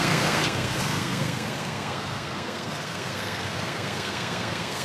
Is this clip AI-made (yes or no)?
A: yes